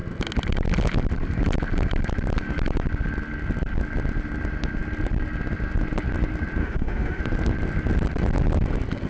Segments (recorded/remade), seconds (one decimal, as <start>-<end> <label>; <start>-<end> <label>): 0.0-6.6 recorded; 6.6-7.2 remade; 7.2-9.1 recorded